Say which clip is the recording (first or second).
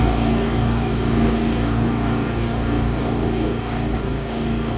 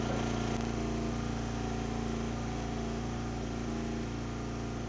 second